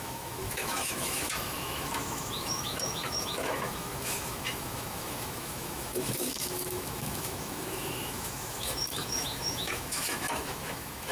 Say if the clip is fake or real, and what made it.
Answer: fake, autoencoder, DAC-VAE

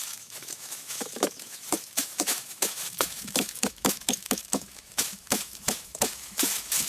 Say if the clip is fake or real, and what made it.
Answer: fake, autoencoder, DAC-VAE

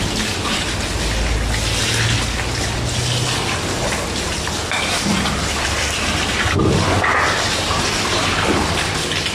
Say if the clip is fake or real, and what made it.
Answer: real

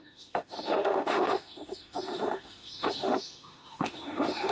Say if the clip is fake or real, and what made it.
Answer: fake, autoencoder, DAC-VAE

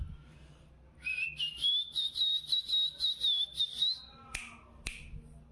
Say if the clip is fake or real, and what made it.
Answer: real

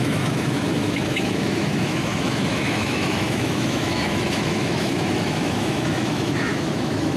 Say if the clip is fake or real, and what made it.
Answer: fake, autoencoder, DAC-VAE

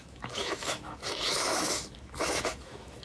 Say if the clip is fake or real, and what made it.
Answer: fake, autoencoder, DAC-VAE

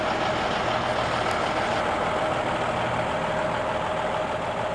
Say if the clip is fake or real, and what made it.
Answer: real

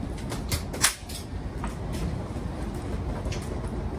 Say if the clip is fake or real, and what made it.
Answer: real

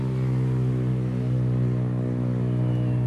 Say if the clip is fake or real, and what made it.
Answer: real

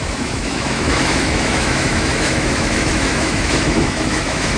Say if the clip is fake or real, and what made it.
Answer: fake, autoencoder, DAC-VAE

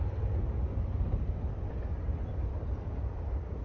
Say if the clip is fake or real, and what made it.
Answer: real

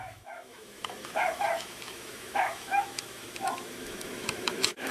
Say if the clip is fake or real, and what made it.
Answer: fake, autoencoder, DAC-VAE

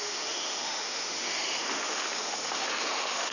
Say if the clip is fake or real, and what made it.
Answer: fake, autoencoder, DAC-VAE